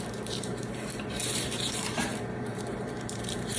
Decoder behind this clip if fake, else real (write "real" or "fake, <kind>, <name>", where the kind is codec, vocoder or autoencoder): fake, vocoder, BigVGAN v2